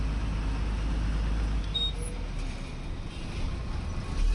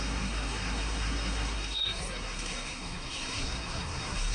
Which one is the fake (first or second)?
second